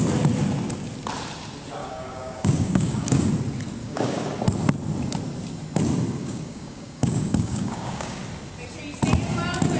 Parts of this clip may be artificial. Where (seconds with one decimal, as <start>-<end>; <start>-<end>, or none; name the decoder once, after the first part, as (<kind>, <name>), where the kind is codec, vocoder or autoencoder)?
1.8-3.3 (codec, DAC); 3.8-4.3; 6.2-8.2